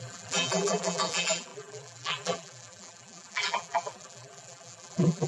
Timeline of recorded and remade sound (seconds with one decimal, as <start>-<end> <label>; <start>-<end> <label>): 0.0-5.3 remade